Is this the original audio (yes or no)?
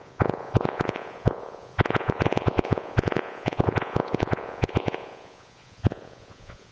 no